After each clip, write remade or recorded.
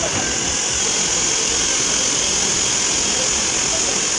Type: recorded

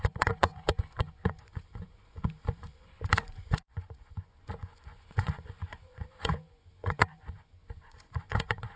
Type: remade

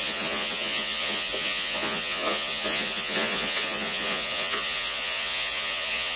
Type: remade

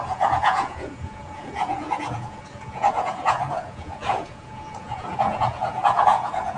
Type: remade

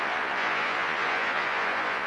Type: remade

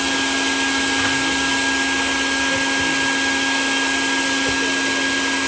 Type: recorded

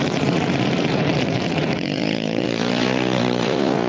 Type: remade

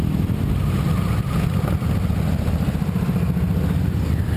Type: recorded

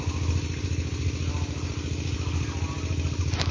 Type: recorded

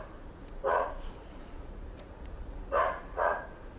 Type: remade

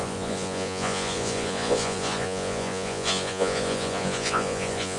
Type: remade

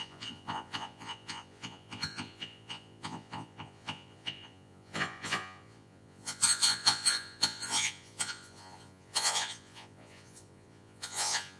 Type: remade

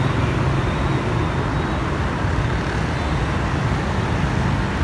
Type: recorded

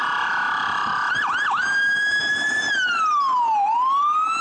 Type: recorded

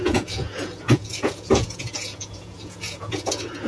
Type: remade